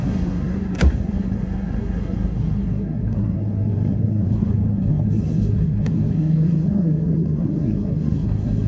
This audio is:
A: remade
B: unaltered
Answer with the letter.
A